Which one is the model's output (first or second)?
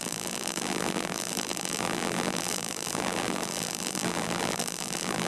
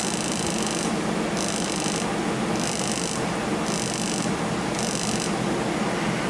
first